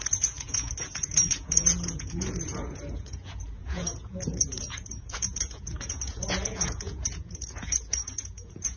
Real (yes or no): no